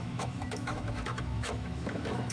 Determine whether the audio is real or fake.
fake